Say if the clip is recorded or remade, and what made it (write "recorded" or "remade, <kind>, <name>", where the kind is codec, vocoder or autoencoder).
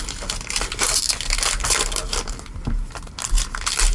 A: recorded